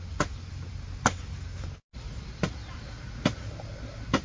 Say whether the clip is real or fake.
real